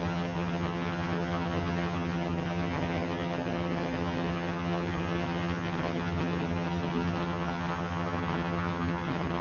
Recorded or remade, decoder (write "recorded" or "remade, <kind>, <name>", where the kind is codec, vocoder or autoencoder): remade, vocoder, HiFi-GAN